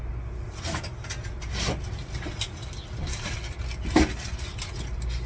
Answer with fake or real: real